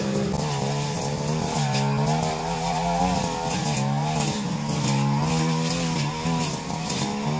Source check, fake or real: real